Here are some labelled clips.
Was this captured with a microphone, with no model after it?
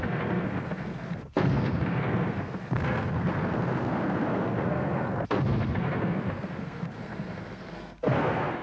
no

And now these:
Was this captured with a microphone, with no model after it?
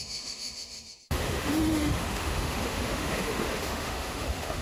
no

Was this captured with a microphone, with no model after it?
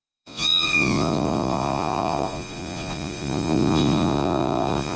no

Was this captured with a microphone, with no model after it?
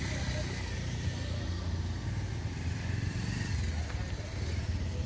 yes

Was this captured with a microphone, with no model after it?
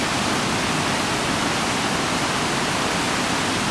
yes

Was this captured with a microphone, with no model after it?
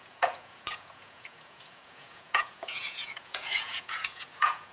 no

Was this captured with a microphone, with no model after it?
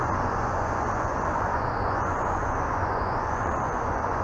no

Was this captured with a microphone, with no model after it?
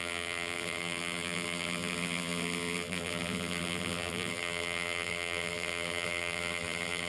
no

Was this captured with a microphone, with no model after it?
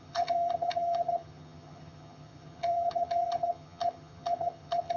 no